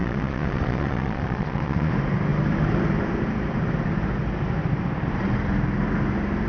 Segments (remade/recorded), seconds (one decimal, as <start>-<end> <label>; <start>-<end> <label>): 0.0-1.9 remade; 1.9-6.5 recorded